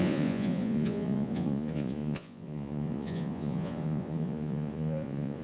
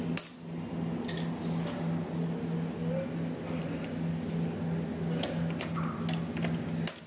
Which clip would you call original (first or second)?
second